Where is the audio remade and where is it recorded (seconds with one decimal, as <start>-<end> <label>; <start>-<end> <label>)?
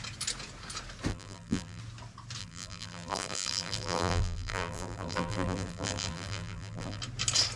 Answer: 0.0-1.1 recorded; 1.1-1.8 remade; 1.8-2.4 recorded; 2.4-7.0 remade; 7.0-7.6 recorded